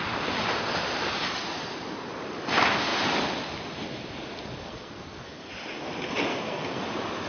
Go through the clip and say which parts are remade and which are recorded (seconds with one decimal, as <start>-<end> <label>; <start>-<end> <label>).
0.0-4.6 recorded; 4.6-5.5 remade; 5.5-6.3 recorded; 6.3-6.8 remade; 6.8-7.3 recorded